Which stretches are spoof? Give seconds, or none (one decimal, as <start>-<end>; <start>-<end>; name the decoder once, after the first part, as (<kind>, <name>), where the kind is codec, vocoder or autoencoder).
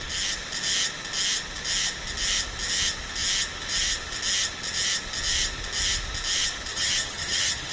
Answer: 6.7-7.7 (vocoder, HiFi-GAN)